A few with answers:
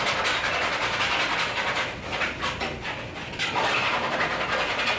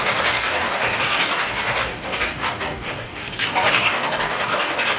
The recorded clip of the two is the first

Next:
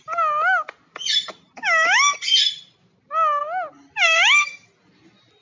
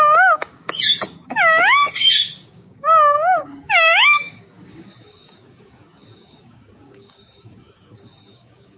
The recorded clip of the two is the first